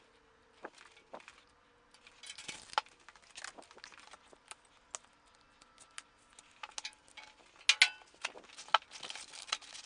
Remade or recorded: recorded